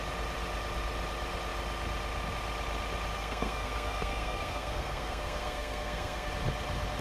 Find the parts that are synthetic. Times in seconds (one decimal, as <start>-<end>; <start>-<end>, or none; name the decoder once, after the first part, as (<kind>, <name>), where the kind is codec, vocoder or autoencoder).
3.1-6.3 (codec, SNAC)